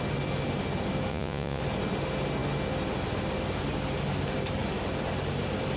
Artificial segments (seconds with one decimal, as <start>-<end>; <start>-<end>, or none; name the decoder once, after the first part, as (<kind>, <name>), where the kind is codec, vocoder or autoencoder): 1.1-1.6 (vocoder, Vocos)